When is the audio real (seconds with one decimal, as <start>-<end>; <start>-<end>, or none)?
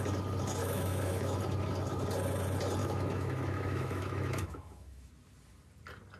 0.0-0.6; 1.4-2.8; 5.1-6.2